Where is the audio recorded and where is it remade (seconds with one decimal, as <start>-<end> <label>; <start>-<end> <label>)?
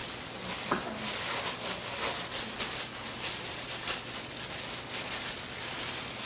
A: 0.0-6.3 recorded